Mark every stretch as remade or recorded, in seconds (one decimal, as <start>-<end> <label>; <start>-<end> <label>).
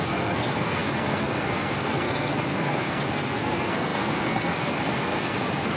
0.0-5.8 remade